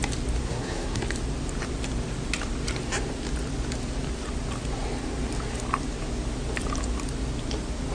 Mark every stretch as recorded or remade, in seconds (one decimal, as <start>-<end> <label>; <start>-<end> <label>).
0.0-0.4 recorded; 0.4-1.0 remade; 1.0-7.9 recorded